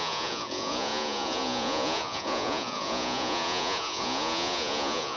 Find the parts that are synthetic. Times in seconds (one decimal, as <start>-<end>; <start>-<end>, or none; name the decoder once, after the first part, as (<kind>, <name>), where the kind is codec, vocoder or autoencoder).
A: 0.0-5.2 (vocoder, Vocos)